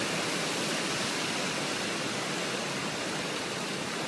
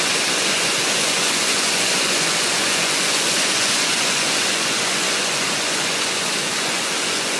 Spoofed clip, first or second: second